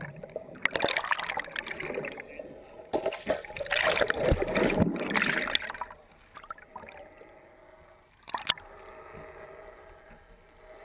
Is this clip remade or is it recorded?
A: recorded